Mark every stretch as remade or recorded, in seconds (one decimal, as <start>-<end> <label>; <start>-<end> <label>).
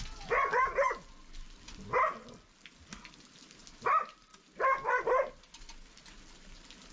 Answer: 0.0-6.9 recorded